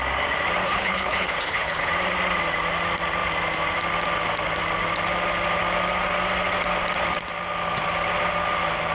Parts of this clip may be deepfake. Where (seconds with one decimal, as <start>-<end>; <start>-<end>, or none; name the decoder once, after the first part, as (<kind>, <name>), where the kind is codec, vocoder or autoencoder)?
0.6-1.9 (codec, HILCodec)